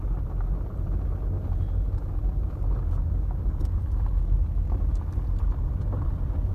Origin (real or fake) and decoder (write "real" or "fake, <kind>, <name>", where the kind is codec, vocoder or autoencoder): real